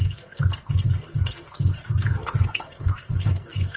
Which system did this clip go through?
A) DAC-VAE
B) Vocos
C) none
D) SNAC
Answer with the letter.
D